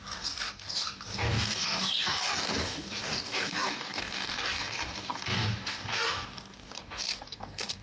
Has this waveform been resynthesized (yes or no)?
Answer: yes